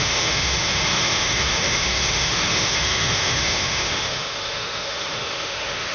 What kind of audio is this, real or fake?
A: fake